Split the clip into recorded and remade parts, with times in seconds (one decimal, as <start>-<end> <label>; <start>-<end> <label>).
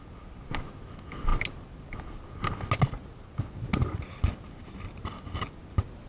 0.0-6.1 recorded